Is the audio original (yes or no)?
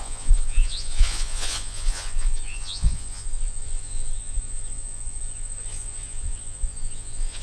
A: no